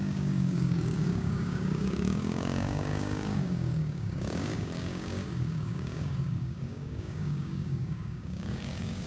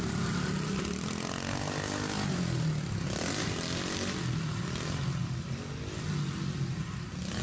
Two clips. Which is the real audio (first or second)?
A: second